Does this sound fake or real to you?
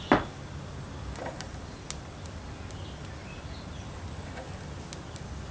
real